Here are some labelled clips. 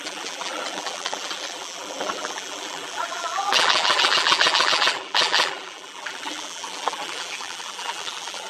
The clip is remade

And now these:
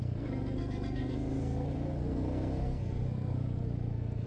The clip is remade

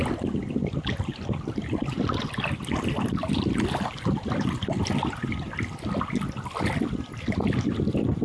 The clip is recorded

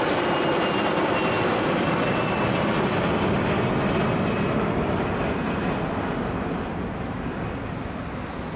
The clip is recorded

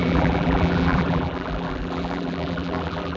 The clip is remade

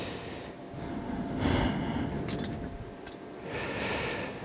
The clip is recorded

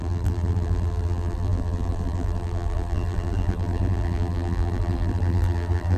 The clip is remade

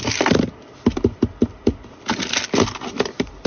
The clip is recorded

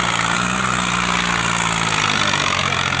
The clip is recorded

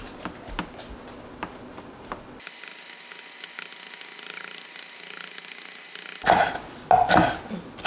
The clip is recorded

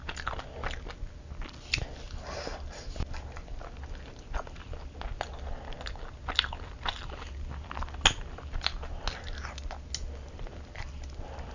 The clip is recorded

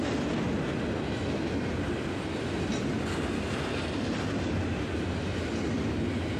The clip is recorded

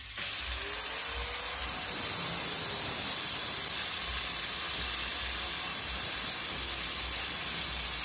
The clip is recorded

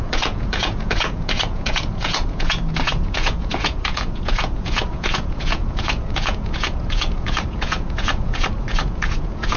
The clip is remade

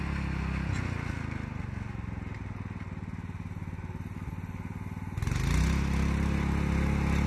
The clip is recorded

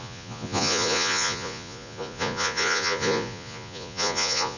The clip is remade